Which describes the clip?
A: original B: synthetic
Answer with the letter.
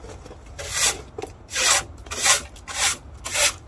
A